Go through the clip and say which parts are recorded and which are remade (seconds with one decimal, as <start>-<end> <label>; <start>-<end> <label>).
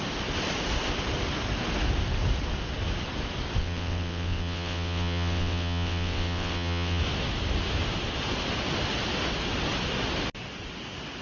0.0-3.6 recorded; 3.6-7.0 remade; 7.0-11.2 recorded